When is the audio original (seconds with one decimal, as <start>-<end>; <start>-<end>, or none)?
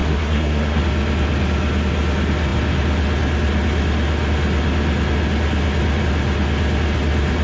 0.8-7.4